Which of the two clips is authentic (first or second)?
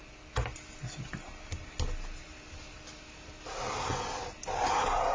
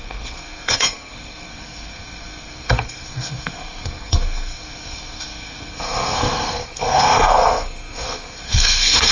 first